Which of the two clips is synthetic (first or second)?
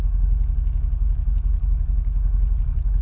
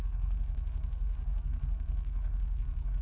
second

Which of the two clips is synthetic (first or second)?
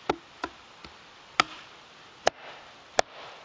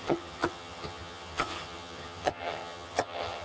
second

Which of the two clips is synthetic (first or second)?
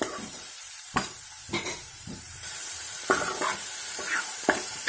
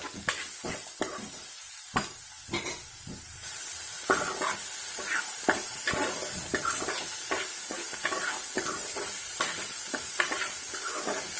first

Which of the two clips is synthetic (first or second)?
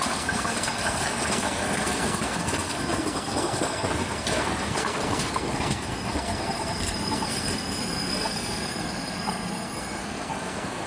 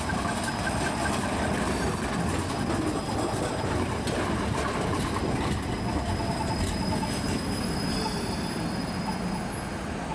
first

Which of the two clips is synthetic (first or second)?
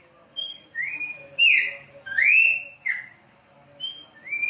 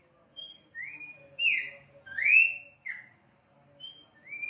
first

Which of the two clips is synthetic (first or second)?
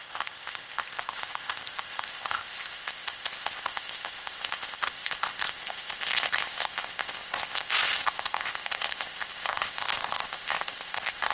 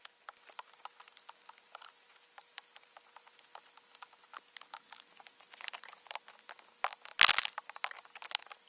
first